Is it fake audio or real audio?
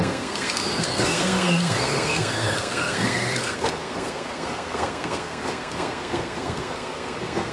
fake